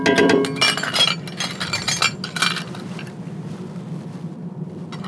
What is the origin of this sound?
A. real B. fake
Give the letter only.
A